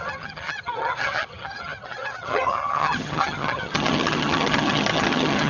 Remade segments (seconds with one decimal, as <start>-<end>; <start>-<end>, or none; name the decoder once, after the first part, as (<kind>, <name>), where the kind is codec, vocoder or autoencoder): 0.0-5.5 (vocoder, HiFi-GAN)